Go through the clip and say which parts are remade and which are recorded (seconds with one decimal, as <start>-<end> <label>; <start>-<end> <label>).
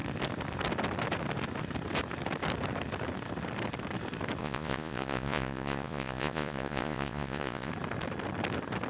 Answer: 0.0-4.4 recorded; 4.4-7.7 remade; 7.7-8.9 recorded